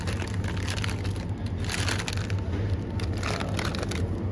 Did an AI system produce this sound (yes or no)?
no